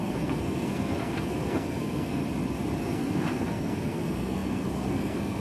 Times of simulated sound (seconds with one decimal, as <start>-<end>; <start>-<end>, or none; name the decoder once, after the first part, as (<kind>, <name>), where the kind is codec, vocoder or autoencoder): 0.0-2.2 (codec, SNAC); 2.8-5.4